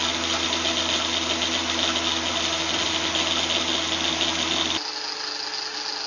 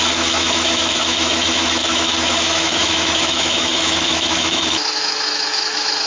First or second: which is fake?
second